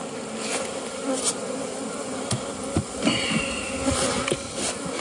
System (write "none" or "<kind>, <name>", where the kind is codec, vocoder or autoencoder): none